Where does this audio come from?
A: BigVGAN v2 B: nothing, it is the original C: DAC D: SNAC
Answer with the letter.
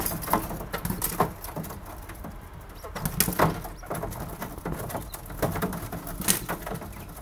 B